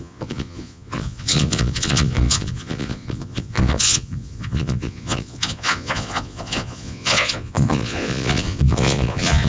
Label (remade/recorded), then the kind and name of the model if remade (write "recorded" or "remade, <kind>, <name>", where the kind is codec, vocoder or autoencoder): remade, vocoder, Vocos